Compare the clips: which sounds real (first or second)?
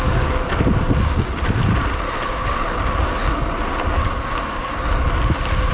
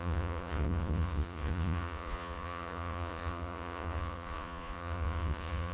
first